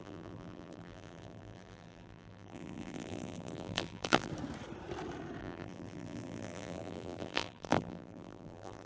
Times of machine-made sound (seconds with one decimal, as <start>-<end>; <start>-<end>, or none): 0.0-4.3; 5.4-8.9